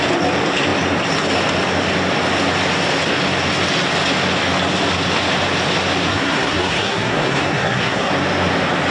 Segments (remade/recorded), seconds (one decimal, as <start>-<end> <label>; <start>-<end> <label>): 0.0-6.1 recorded; 6.1-8.1 remade; 8.1-8.9 recorded